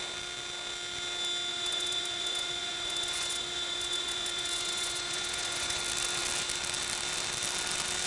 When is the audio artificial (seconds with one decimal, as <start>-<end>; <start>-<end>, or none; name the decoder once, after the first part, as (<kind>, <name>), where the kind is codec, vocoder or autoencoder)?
1.5-5.8 (vocoder, Vocos)